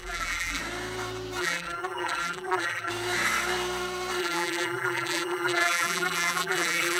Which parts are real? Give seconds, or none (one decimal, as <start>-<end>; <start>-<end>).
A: 0.6-1.4; 2.9-4.2